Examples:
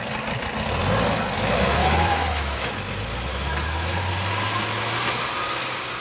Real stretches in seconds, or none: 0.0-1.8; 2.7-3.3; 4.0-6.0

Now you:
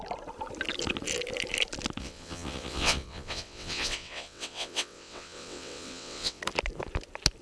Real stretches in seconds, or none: 0.0-2.0; 6.4-7.4

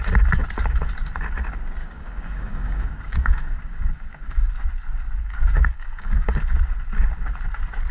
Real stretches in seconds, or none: 0.0-1.8; 4.5-5.2; 6.4-7.9

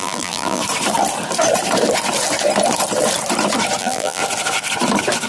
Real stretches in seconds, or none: 0.6-3.8; 4.2-5.3

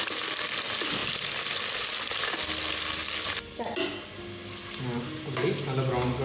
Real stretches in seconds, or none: 0.0-6.2

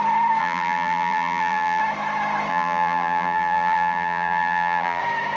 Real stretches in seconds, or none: 0.0-0.4; 1.8-2.5; 5.0-5.4

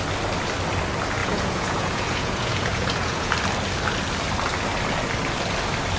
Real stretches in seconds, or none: 0.0-1.2; 3.3-6.0